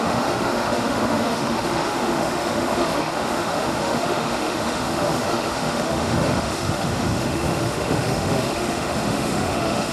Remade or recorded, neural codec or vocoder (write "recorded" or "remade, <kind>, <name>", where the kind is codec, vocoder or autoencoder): remade, autoencoder, DAC-VAE